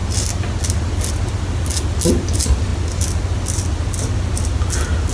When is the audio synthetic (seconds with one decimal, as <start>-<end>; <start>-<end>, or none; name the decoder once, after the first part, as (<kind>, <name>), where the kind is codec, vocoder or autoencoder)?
none